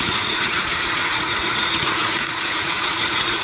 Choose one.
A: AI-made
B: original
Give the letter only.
A